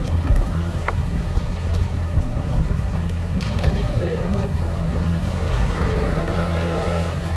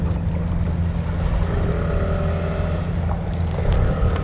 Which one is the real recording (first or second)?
second